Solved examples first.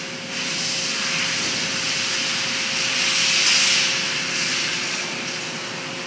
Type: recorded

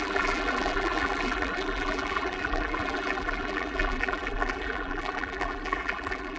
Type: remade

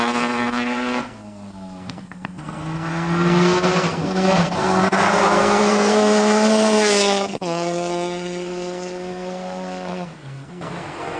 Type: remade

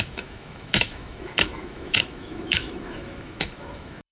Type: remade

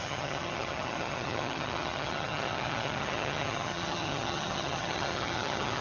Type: remade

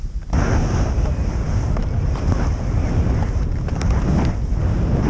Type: recorded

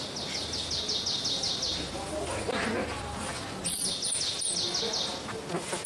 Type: recorded